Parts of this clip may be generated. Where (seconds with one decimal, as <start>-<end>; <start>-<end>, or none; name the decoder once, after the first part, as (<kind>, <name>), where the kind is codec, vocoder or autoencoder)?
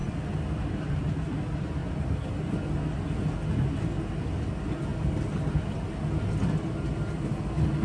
none